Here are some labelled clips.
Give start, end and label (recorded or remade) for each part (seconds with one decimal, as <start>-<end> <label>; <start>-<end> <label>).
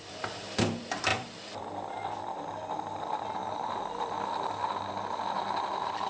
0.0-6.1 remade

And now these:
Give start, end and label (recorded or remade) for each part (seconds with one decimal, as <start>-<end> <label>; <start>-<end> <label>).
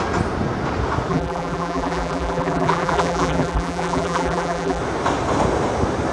0.0-1.1 recorded; 1.1-4.8 remade; 4.8-6.1 recorded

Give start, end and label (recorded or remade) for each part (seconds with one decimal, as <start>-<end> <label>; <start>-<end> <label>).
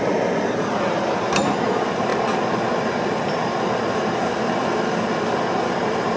0.0-2.1 remade; 2.1-5.8 recorded; 5.8-6.2 remade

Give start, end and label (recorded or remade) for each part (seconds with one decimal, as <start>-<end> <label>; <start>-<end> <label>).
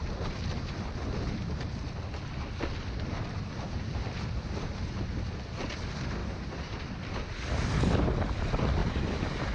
0.0-6.2 recorded; 6.2-6.8 remade; 6.8-8.8 recorded; 8.8-9.5 remade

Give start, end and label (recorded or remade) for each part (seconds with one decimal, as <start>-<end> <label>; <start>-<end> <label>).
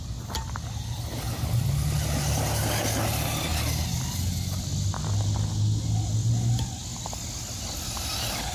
0.0-8.5 recorded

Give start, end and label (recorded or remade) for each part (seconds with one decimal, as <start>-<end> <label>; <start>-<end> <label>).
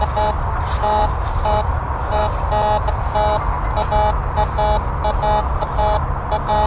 0.0-2.2 remade; 2.2-5.4 recorded; 5.4-6.7 remade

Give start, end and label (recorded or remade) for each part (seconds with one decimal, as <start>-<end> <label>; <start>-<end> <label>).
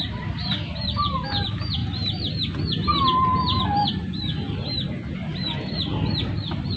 0.0-1.8 remade; 1.8-3.6 recorded; 3.6-5.3 remade; 5.3-6.1 recorded; 6.1-6.8 remade